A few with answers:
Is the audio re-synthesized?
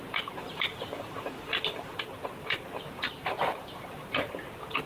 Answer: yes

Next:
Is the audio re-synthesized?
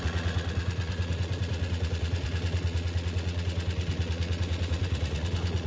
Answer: yes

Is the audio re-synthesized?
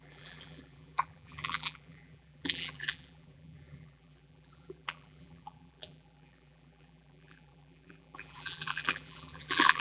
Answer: yes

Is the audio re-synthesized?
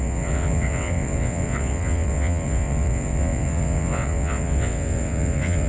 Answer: yes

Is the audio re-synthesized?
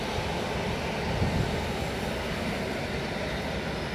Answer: no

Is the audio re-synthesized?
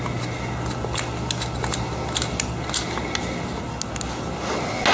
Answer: no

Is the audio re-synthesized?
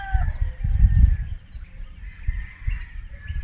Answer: no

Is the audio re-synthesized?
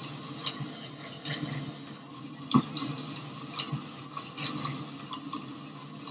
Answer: no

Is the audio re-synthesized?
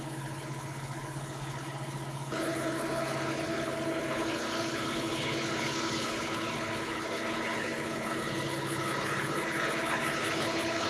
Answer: yes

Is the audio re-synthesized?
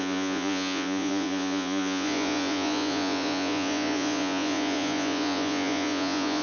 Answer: yes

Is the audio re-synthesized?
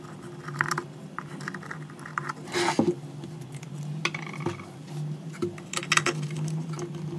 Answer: no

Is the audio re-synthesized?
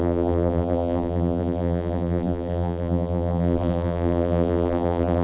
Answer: yes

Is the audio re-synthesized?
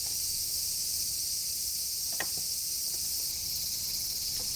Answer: no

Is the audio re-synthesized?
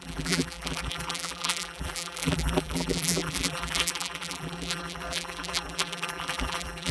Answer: yes